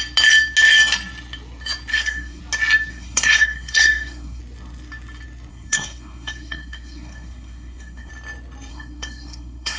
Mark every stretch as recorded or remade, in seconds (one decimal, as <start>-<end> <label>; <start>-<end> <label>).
0.0-1.9 recorded; 1.9-2.4 remade; 2.4-2.9 recorded; 2.9-4.4 remade; 4.4-5.5 recorded; 5.5-8.1 remade; 8.1-8.7 recorded; 8.7-9.8 remade